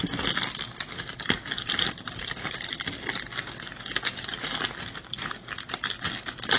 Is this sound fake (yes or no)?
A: no